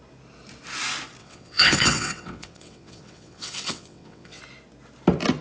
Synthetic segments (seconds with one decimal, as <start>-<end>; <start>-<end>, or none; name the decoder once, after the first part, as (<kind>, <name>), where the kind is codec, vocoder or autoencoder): 1.2-4.4 (vocoder, WaveNeXt)